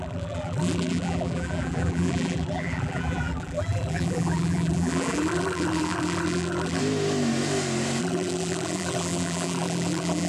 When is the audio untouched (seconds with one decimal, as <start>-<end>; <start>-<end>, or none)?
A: 6.8-8.0